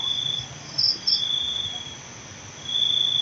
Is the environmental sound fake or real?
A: real